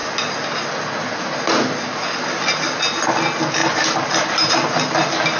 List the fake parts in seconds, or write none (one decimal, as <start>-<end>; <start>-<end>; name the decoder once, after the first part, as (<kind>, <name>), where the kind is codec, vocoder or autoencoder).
3.6-4.5 (vocoder, BigVGAN v2)